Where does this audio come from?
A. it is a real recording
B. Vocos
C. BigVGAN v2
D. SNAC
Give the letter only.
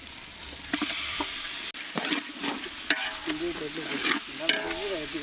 A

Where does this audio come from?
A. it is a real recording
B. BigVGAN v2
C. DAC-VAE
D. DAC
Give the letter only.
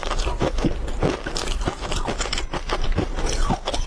A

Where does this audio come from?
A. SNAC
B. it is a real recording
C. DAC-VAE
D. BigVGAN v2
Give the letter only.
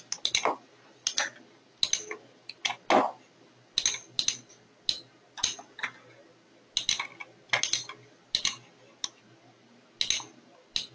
B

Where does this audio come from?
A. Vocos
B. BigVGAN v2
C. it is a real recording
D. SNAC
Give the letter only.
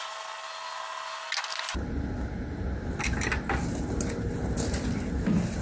C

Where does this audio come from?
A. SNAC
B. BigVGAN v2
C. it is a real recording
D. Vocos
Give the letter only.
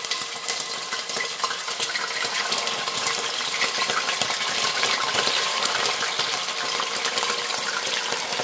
C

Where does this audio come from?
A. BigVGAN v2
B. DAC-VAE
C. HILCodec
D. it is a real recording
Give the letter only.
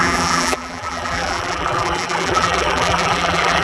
A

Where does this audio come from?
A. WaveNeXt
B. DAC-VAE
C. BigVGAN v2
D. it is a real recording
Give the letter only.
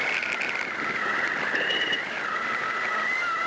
D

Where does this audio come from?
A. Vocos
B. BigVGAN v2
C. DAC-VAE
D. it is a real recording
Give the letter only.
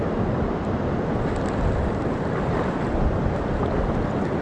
D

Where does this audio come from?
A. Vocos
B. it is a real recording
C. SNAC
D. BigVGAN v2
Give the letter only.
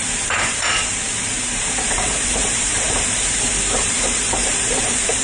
D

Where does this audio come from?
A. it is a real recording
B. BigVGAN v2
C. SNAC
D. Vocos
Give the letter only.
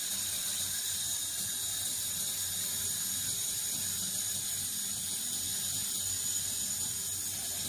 A